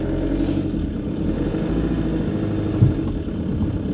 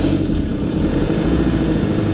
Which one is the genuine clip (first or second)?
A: first